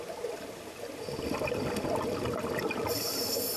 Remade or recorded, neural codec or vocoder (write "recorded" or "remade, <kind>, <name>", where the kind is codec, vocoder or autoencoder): recorded